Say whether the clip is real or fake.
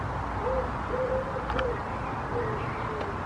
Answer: real